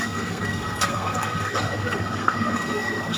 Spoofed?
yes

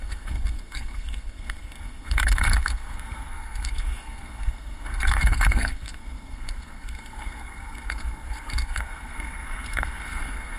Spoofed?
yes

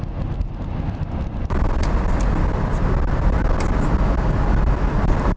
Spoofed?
no